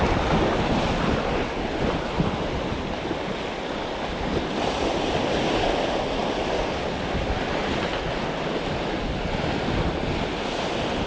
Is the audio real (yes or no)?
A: yes